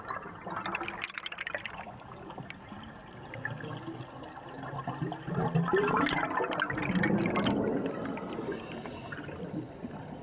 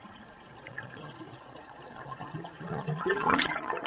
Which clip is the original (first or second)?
first